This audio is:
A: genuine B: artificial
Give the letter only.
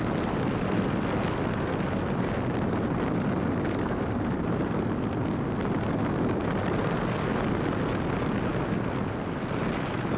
A